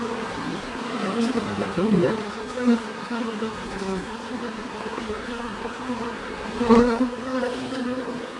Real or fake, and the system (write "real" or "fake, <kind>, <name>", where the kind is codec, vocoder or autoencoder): fake, codec, SNAC